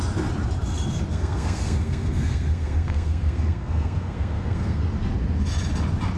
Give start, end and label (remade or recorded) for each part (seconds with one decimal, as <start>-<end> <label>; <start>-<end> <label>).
0.0-1.1 recorded; 1.1-4.8 remade; 4.8-6.2 recorded